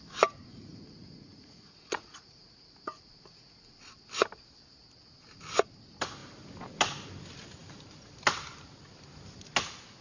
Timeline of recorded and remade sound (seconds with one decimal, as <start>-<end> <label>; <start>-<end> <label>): 0.0-0.5 recorded; 0.5-3.7 remade; 3.7-10.0 recorded